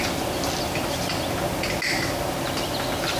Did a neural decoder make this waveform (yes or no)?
no